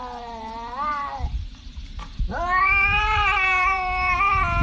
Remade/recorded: remade